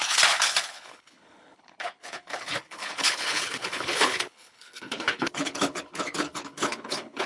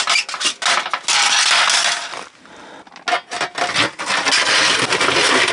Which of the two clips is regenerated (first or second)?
first